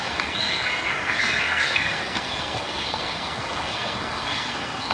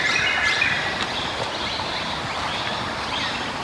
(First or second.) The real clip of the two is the second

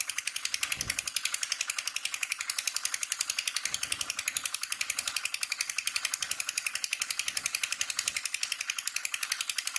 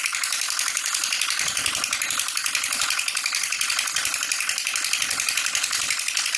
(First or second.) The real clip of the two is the first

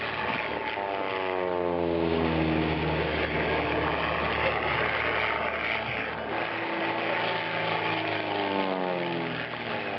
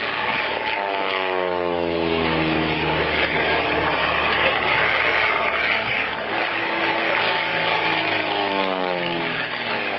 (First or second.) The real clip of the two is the first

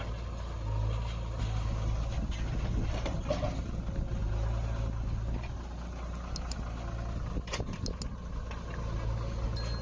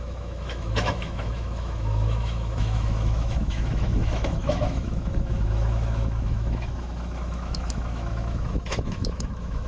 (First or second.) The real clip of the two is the first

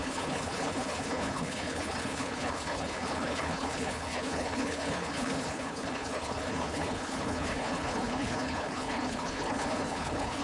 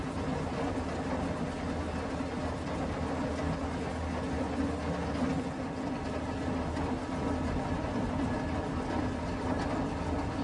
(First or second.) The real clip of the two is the second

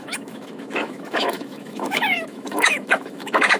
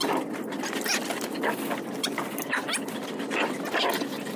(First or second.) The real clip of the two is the second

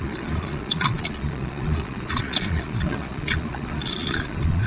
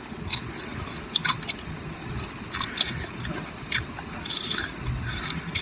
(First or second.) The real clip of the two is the second